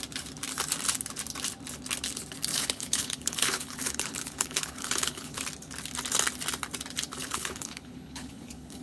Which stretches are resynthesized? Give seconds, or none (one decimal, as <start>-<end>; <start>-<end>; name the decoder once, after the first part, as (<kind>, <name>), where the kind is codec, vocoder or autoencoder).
2.5-5.4 (codec, HILCodec); 7.2-8.8